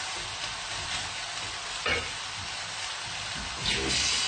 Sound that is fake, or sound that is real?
real